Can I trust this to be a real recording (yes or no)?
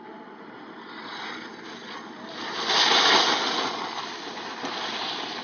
yes